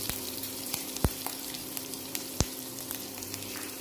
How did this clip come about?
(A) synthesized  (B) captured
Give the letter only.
A